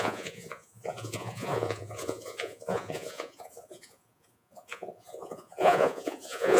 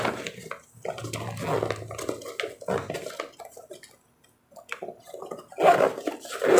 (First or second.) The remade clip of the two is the first